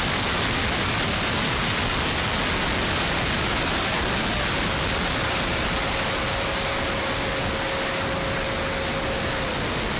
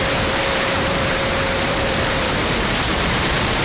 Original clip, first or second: first